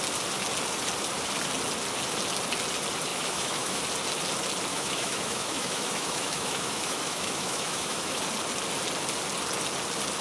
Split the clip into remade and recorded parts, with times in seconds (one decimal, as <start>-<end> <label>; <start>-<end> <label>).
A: 0.0-3.1 recorded; 3.1-3.8 remade; 3.8-4.7 recorded; 4.7-8.2 remade; 8.2-10.2 recorded